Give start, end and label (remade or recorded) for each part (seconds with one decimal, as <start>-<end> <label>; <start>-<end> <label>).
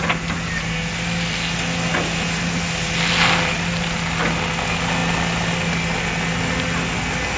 0.0-7.4 recorded